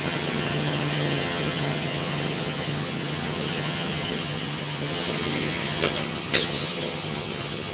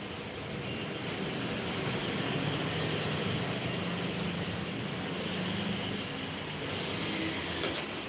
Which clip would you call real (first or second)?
second